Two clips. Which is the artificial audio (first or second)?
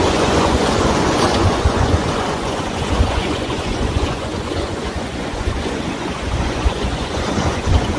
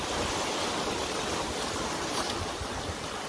first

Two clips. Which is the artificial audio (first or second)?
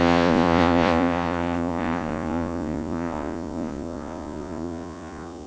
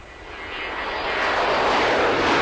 first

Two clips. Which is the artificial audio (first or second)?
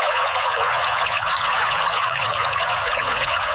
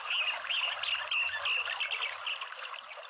first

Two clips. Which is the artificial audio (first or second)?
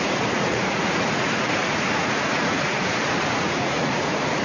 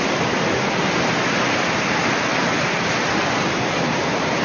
first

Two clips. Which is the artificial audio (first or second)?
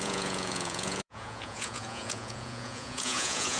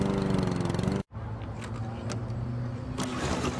first